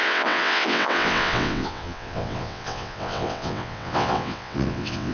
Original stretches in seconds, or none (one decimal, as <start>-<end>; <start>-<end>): none